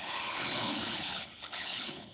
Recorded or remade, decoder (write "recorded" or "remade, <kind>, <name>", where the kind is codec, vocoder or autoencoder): remade, codec, HILCodec